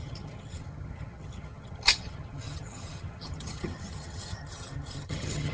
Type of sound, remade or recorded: remade